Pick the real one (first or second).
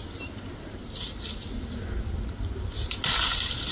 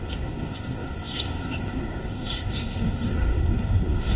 first